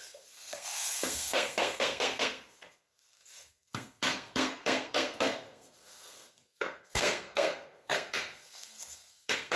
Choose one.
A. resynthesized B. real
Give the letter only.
A